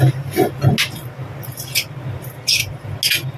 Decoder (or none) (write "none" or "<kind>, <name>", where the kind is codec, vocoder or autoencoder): none